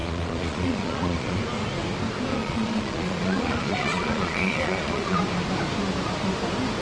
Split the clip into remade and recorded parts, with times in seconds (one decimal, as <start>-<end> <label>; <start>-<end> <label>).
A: 0.0-1.4 remade; 1.4-2.3 recorded; 2.3-5.2 remade; 5.2-6.8 recorded

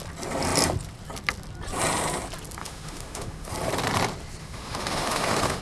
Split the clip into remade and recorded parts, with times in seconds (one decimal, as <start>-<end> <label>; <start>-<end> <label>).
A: 0.0-2.6 recorded; 2.6-3.5 remade; 3.5-4.4 recorded; 4.4-5.6 remade

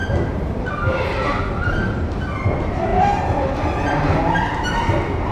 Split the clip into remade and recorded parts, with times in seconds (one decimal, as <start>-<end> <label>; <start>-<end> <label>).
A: 0.0-0.7 remade; 0.7-2.9 recorded; 2.9-5.3 remade

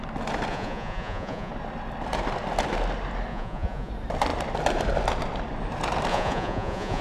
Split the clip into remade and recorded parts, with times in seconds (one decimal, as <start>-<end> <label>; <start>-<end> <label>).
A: 0.0-0.5 recorded; 0.5-1.5 remade; 1.5-3.3 recorded; 3.3-3.9 remade; 3.9-6.1 recorded; 6.1-7.0 remade

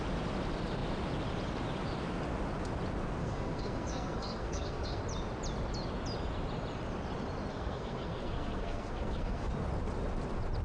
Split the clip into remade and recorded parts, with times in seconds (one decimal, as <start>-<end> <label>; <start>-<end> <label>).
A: 0.0-3.2 recorded; 3.2-5.0 remade; 5.0-7.5 recorded; 7.5-9.5 remade; 9.5-10.6 recorded

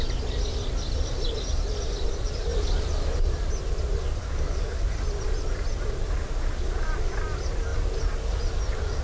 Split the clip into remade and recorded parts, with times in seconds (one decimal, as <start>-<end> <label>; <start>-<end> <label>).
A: 0.0-4.2 recorded; 4.2-4.8 remade; 4.8-9.0 recorded